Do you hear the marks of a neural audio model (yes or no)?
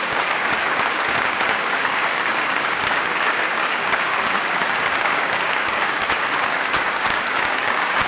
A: yes